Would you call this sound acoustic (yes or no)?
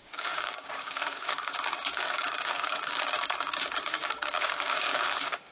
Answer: no